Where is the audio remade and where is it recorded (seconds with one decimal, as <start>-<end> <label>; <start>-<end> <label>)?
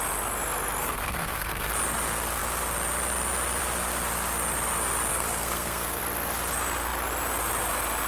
0.0-0.8 recorded; 0.8-1.7 remade; 1.7-5.1 recorded; 5.1-6.0 remade; 6.0-8.1 recorded